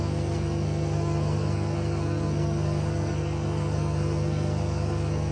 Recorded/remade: remade